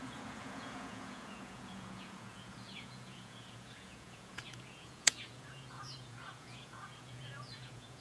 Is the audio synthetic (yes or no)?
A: yes